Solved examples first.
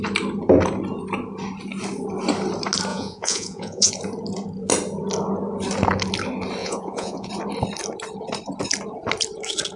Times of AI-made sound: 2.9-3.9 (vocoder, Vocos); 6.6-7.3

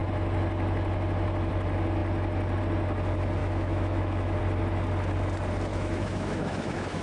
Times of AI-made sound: 3.4-4.4 (autoencoder, DAC-VAE); 5.7-7.0